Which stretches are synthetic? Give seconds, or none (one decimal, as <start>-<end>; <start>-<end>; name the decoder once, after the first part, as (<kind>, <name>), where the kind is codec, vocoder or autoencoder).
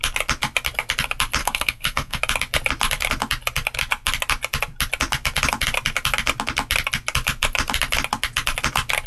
1.4-2.2 (codec, SNAC)